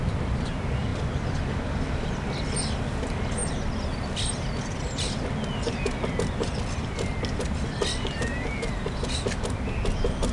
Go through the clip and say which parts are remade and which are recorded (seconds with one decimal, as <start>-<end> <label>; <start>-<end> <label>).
0.0-10.3 recorded